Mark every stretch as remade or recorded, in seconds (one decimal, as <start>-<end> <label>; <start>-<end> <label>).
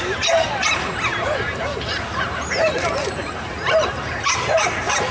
0.0-1.1 recorded; 1.1-4.2 remade; 4.2-5.1 recorded